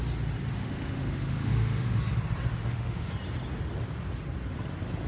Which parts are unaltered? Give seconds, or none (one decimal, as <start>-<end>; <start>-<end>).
0.0-0.6; 2.0-2.5; 3.1-5.1